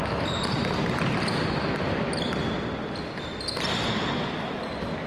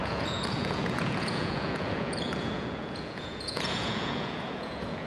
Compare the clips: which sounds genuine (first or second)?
first